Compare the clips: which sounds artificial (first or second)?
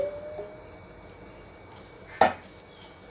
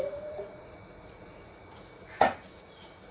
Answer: second